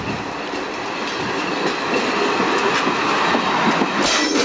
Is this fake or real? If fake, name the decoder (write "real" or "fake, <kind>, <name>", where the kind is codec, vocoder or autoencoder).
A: real